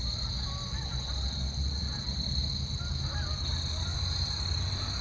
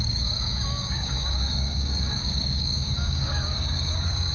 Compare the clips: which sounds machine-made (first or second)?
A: second